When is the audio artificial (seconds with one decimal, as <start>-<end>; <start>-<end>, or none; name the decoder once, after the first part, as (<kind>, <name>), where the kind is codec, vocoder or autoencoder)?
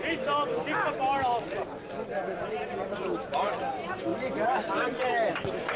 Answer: none